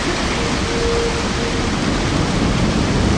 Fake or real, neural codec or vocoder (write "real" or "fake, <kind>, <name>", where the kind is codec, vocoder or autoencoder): real